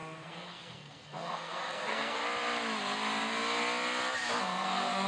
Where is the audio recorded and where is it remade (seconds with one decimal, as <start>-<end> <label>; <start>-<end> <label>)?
0.0-2.2 remade; 2.2-4.4 recorded; 4.4-5.1 remade